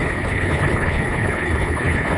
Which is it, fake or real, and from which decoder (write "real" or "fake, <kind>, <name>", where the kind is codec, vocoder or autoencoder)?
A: fake, codec, HILCodec